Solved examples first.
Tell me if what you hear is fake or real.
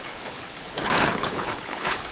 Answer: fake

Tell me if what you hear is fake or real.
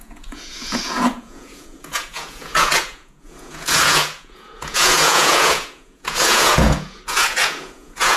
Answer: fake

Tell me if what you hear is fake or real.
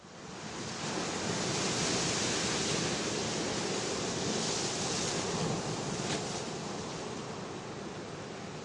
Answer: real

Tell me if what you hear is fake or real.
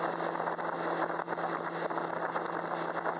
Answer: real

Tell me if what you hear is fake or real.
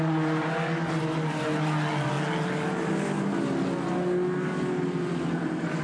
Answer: real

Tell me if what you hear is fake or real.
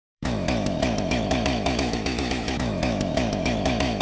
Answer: fake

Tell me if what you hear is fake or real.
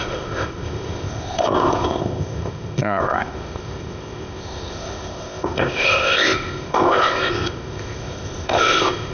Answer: fake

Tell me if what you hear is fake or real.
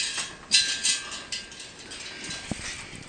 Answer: real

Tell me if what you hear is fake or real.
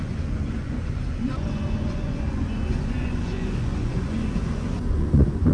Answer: fake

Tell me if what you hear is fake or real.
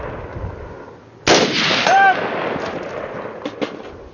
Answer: real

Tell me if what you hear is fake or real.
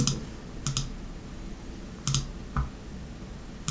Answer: real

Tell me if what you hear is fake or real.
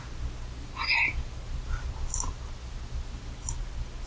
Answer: real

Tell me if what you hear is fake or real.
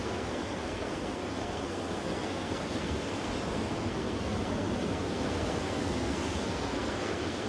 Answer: fake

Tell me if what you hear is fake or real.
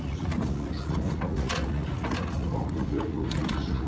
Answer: fake